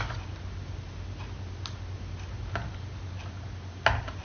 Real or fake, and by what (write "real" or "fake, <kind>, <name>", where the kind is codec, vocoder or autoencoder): real